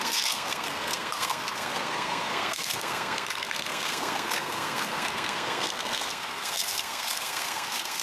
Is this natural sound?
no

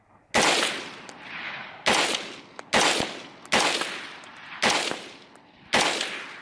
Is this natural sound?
yes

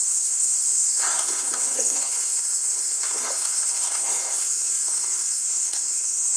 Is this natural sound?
no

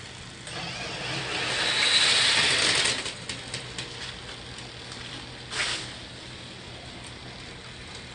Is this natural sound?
yes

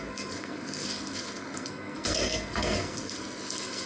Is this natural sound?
no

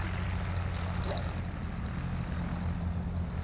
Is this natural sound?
yes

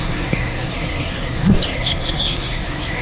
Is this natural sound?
no